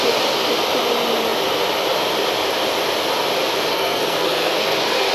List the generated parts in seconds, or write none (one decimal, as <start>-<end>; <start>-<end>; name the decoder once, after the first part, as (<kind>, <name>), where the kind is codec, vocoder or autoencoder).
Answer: 3.7-5.1 (codec, SNAC)